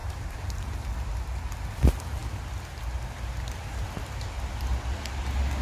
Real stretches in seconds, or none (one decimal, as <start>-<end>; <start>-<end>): 0.8-5.6